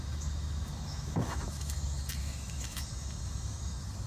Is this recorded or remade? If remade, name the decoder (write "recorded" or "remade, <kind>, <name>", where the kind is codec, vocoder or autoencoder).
remade, autoencoder, DAC-VAE